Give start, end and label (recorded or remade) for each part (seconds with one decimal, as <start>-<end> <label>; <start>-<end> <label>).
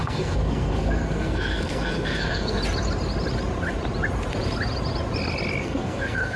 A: 0.0-2.6 remade; 2.6-5.6 recorded; 5.6-6.4 remade